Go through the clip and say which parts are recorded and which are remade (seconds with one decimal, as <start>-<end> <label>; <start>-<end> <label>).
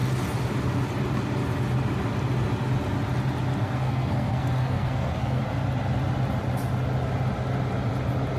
0.0-3.6 recorded; 3.6-5.4 remade; 5.4-8.4 recorded